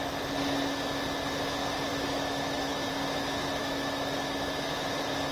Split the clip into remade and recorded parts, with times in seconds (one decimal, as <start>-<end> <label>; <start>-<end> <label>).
0.0-1.9 recorded; 1.9-2.9 remade; 2.9-3.6 recorded; 3.6-4.2 remade; 4.2-5.3 recorded